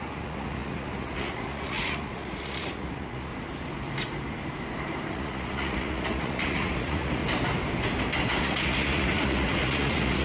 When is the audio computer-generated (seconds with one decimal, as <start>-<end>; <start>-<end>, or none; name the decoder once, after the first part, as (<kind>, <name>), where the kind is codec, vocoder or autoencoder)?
0.0-3.3 (vocoder, Vocos); 5.1-7.2; 8.4-10.2